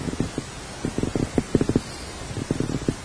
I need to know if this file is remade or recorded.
recorded